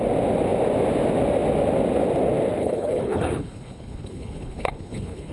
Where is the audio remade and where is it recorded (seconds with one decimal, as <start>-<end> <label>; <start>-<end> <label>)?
0.0-2.6 recorded; 2.6-5.3 remade